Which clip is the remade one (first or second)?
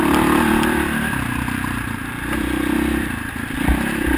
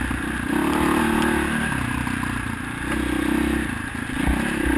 first